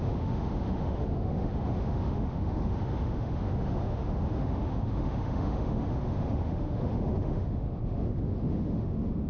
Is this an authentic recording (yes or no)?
no